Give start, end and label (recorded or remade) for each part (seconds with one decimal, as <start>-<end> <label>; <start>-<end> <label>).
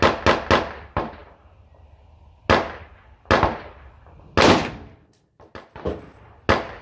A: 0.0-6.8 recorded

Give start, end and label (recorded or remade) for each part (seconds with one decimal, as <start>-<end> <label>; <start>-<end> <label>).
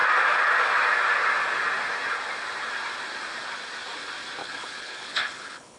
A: 0.0-4.4 recorded; 4.4-5.8 remade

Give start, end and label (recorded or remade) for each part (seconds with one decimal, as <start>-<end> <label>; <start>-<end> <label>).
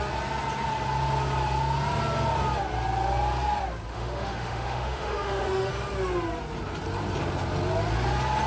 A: 0.0-3.9 recorded; 3.9-5.7 remade; 5.7-8.5 recorded